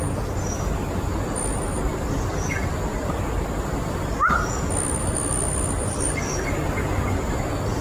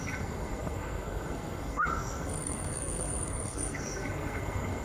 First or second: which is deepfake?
second